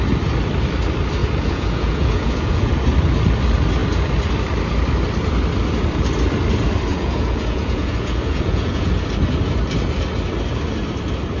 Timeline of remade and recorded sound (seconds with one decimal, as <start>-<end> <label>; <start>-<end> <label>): 0.0-1.2 recorded; 1.2-2.7 remade; 2.7-6.9 recorded; 6.9-8.9 remade; 8.9-11.4 recorded

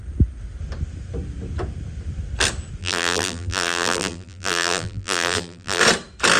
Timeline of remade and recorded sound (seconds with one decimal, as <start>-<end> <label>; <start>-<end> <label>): 0.0-2.8 recorded; 2.8-5.8 remade; 5.8-6.4 recorded

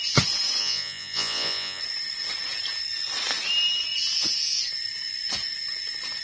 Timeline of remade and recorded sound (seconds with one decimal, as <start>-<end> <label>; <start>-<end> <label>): 0.0-0.6 recorded; 0.6-1.8 remade; 1.8-6.2 recorded

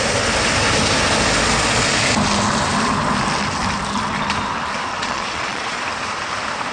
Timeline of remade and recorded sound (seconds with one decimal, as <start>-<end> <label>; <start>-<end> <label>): 0.0-4.9 recorded; 4.9-5.8 remade; 5.8-6.7 recorded

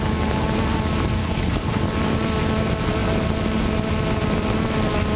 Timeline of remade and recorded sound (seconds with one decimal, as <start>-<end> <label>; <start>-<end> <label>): 0.0-1.2 recorded; 1.2-1.8 remade; 1.8-5.2 recorded

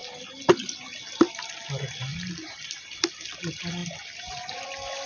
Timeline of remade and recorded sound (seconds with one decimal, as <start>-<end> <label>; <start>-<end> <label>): 0.0-1.0 remade; 1.0-2.1 recorded; 2.1-3.0 remade; 3.0-5.1 recorded

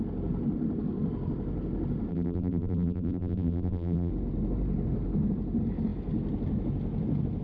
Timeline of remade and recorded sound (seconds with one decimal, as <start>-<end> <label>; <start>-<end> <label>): 0.0-2.1 recorded; 2.1-4.1 remade; 4.1-7.4 recorded